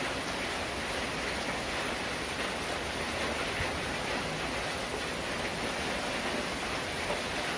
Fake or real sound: real